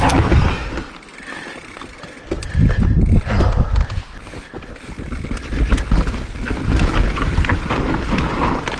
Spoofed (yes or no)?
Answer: no